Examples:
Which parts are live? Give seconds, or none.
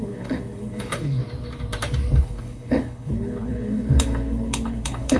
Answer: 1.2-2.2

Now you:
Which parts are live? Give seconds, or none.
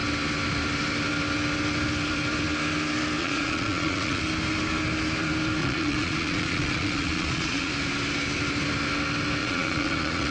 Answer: 0.0-3.2; 4.2-5.6; 7.7-9.4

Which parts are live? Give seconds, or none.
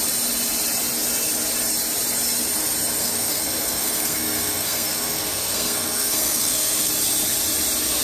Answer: 0.0-3.0; 6.9-8.0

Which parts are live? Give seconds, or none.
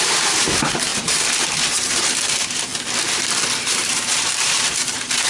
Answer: 2.7-3.6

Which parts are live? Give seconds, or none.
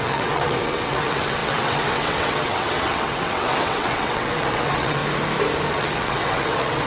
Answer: 5.0-5.7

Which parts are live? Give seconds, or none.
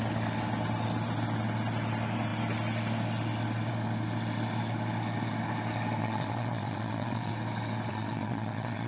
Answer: 0.0-6.0; 7.3-7.9